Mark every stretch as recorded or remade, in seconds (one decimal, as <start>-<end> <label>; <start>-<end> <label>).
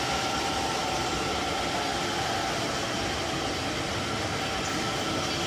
0.0-5.5 recorded